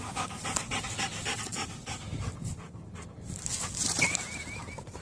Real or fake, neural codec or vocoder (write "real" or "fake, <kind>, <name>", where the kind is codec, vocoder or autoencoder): real